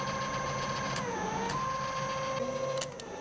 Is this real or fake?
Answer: real